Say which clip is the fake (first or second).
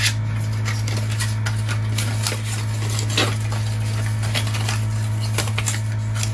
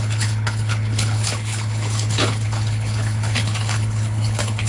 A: second